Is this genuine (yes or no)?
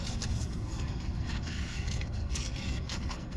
no